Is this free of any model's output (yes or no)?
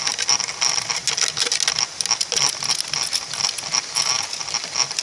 yes